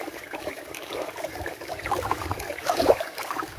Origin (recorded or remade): remade